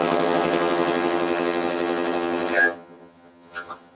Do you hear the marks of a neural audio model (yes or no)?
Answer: yes